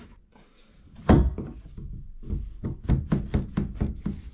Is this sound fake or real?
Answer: real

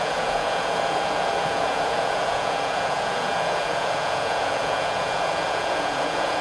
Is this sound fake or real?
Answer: fake